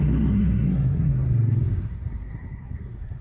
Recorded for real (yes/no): no